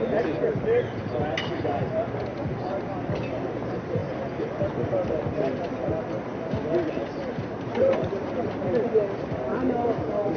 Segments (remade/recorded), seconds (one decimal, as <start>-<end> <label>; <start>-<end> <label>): 0.0-9.5 recorded; 9.5-10.4 remade